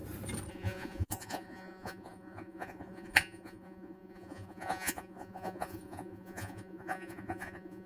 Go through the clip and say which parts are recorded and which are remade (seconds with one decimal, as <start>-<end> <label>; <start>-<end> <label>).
0.0-0.5 recorded; 0.5-7.9 remade